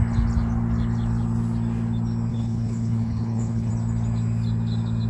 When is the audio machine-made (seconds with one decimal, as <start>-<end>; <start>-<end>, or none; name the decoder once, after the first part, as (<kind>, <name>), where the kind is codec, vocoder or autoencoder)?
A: 2.3-3.7 (codec, HILCodec)